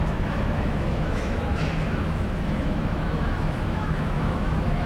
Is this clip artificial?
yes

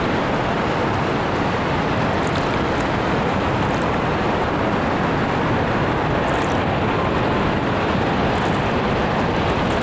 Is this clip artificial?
no